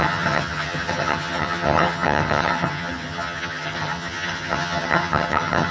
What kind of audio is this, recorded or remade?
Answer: remade